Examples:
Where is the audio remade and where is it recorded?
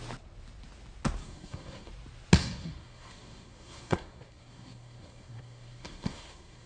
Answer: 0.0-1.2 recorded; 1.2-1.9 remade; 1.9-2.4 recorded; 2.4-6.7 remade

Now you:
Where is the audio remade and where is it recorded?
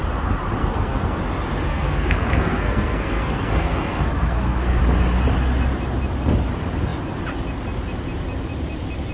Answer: 0.0-0.6 recorded; 0.6-1.2 remade; 1.2-1.7 recorded; 1.7-4.8 remade; 4.8-9.1 recorded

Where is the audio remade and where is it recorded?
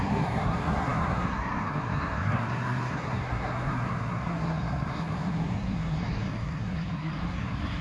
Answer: 0.0-7.8 remade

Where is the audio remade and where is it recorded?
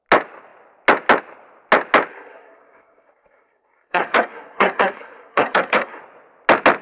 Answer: 0.0-2.1 recorded; 2.1-6.0 remade; 6.0-6.8 recorded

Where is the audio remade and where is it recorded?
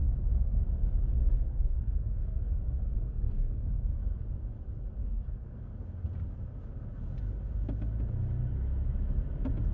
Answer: 0.0-0.6 remade; 0.6-1.1 recorded; 1.1-4.2 remade; 4.2-5.0 recorded; 5.0-5.7 remade; 5.7-9.7 recorded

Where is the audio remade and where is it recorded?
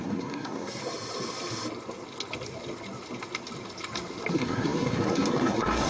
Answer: 0.0-0.8 remade; 0.8-4.3 recorded; 4.3-5.9 remade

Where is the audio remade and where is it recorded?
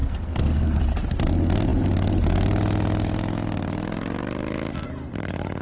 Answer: 0.0-0.8 remade; 0.8-5.6 recorded